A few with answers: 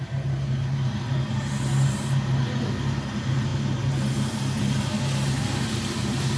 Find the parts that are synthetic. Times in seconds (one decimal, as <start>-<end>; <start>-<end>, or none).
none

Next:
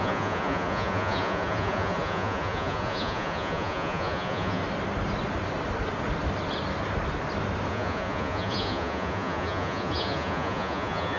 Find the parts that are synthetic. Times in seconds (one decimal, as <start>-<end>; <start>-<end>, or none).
0.0-4.6; 7.7-11.2

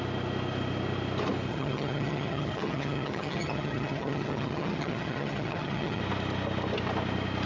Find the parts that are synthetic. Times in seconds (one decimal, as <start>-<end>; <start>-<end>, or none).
1.5-6.0

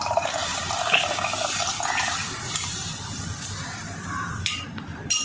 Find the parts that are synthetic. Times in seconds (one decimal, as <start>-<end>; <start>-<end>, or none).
0.0-5.2